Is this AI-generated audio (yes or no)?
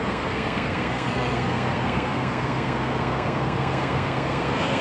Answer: yes